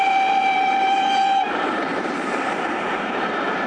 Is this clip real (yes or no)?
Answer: no